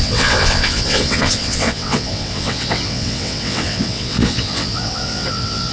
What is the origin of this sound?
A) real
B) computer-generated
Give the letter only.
B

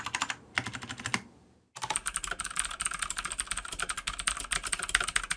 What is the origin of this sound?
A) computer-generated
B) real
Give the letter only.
B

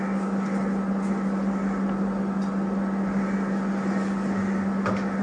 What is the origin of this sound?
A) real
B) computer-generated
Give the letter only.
A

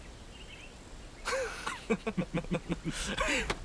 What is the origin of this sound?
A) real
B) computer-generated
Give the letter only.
A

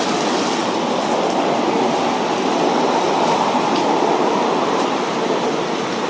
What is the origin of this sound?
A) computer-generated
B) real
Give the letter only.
B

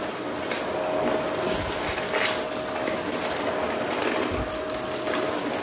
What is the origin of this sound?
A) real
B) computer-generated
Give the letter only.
A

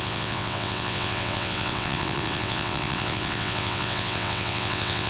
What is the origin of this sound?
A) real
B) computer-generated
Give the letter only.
B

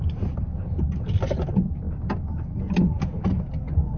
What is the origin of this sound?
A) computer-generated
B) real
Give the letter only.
B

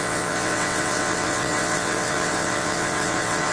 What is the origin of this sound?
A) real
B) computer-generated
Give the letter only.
B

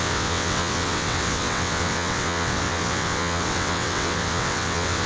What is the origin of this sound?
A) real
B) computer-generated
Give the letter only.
B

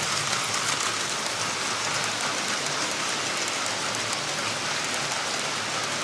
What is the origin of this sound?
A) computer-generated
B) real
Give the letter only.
B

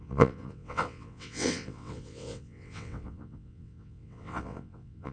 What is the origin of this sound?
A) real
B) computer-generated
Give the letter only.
B